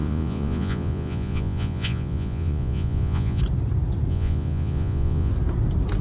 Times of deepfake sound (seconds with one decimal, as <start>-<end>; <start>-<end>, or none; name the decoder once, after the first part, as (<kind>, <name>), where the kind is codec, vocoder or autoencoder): 0.0-3.4 (vocoder, Vocos); 4.1-5.3